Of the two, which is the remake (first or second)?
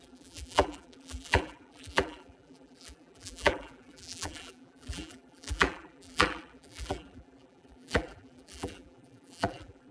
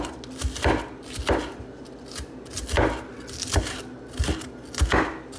first